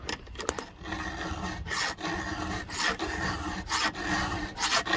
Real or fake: real